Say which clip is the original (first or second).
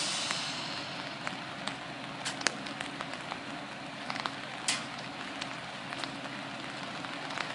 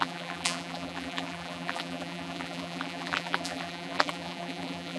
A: first